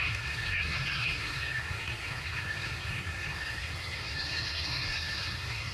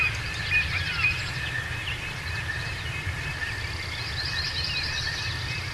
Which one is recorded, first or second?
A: second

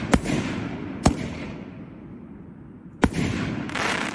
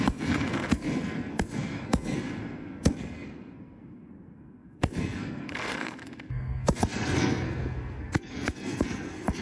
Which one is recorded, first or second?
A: first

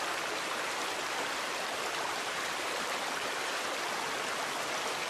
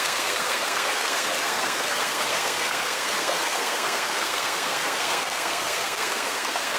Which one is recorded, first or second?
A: first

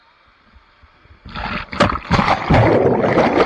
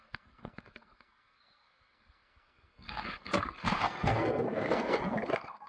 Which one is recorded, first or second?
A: first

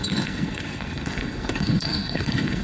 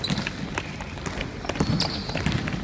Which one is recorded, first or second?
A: second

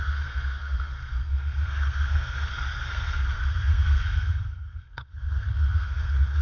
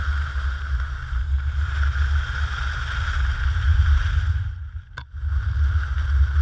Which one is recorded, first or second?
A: second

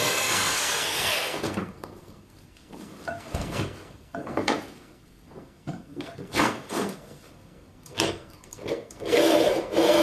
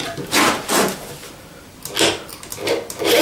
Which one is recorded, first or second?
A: second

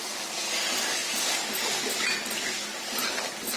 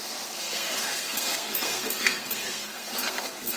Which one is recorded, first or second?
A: first